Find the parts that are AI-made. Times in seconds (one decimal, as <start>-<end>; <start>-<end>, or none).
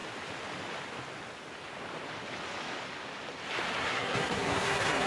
3.8-5.1